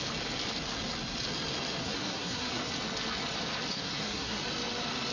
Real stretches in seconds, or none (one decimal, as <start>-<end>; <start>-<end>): 0.0-1.8; 2.7-3.7; 4.4-5.1